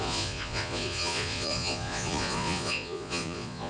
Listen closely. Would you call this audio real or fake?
fake